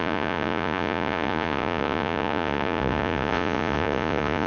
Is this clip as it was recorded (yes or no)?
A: no